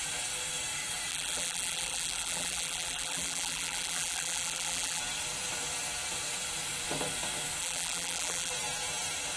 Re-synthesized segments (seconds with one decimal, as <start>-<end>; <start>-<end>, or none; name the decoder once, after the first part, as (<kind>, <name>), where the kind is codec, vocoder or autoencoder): 1.1-5.0 (vocoder, BigVGAN v2); 7.6-8.5

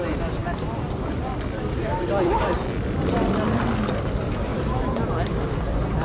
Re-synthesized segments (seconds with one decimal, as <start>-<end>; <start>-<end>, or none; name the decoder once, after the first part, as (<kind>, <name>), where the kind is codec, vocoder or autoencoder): 4.5-5.1 (vocoder, BigVGAN v2)

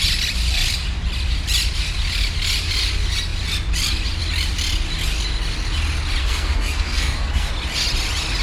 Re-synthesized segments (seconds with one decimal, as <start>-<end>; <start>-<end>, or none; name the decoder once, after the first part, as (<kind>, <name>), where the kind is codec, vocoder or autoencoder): 6.2-7.5 (codec, SNAC)

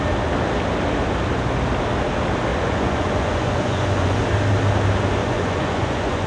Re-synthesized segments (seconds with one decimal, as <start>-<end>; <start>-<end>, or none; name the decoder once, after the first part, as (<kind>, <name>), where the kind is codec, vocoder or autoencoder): 2.5-4.2 (vocoder, Vocos); 5.2-6.3

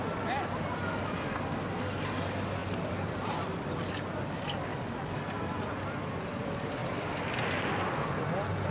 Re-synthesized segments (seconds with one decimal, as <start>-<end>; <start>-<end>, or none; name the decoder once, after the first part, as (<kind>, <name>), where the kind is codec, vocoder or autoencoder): 2.6-3.9 (vocoder, BigVGAN v2); 4.7-5.7